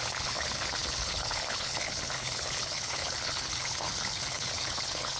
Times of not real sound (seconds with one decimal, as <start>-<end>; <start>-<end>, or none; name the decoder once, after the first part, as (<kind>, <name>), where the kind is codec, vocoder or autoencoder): 0.0-5.2 (codec, HILCodec)